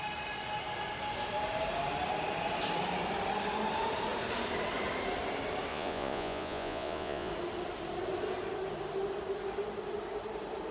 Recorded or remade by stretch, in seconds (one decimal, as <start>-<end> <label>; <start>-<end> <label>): 0.0-5.7 recorded; 5.7-7.3 remade; 7.3-10.7 recorded